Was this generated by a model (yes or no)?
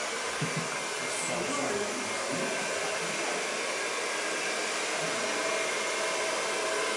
no